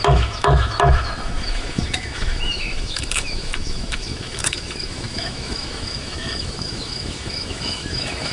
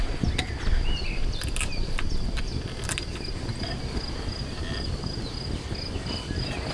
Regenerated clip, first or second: first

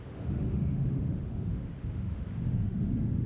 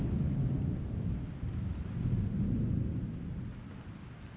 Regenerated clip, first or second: first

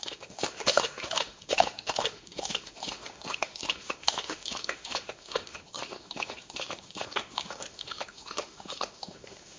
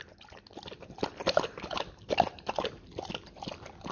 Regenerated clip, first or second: first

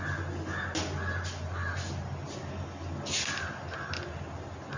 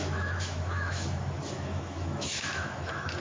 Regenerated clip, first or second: second